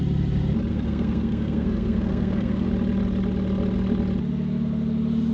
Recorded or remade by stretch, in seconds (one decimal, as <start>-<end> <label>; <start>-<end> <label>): 0.0-0.7 recorded; 0.7-2.7 remade; 2.7-5.3 recorded